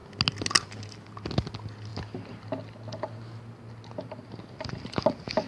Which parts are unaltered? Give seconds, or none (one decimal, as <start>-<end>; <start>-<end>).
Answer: 0.0-5.5